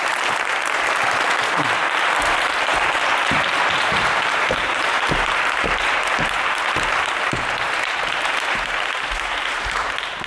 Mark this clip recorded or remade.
remade